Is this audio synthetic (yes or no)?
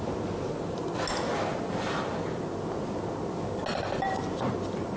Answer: no